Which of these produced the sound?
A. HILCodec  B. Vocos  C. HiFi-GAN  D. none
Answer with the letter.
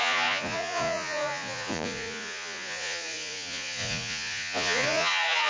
B